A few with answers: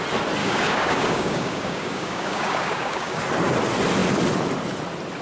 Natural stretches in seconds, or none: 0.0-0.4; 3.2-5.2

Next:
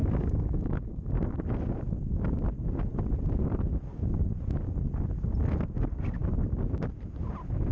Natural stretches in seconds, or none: 1.1-7.7